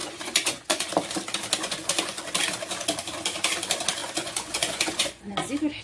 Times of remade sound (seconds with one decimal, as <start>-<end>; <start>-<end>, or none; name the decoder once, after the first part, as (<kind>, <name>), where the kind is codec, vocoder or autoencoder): 0.0-0.9 (vocoder, Vocos); 1.6-2.2; 4.0-5.3